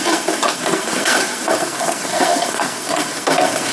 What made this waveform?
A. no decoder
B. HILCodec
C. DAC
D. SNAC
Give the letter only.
D